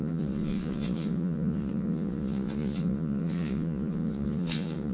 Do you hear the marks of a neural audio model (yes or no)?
yes